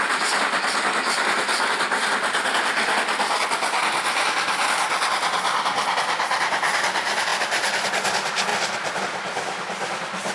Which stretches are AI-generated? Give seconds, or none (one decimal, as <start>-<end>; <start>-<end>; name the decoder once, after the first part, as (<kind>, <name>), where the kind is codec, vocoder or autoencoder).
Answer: none